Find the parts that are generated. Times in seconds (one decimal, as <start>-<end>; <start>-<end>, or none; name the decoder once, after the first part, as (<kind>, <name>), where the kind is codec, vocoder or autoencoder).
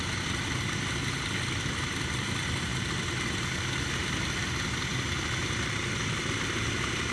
none